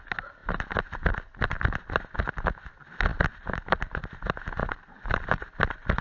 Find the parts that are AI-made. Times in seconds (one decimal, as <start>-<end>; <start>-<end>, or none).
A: 0.4-2.0; 4.6-5.4